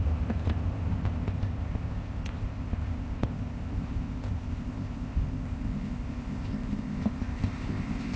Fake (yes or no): yes